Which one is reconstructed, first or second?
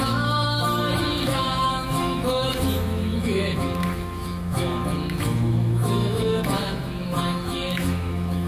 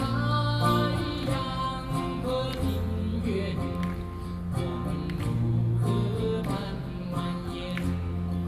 first